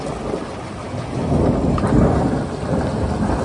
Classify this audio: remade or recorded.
recorded